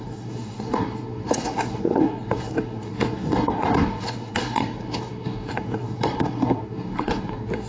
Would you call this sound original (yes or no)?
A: no